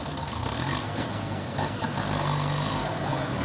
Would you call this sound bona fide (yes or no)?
no